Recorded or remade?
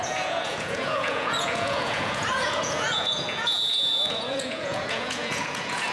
remade